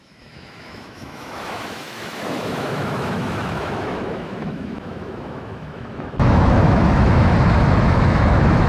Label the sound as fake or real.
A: fake